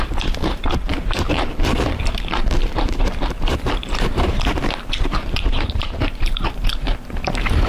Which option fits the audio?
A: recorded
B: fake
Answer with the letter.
B